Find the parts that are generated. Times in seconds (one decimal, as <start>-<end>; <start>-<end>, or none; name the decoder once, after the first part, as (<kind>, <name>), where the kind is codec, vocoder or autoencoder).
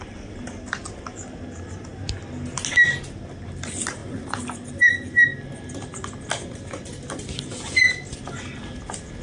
none